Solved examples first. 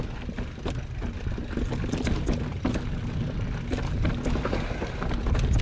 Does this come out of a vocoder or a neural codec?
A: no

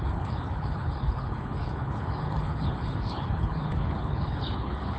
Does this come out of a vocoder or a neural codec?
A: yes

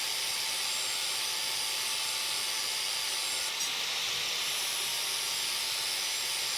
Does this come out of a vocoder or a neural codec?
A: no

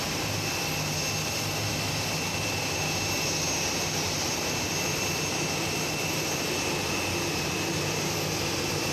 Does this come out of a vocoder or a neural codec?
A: no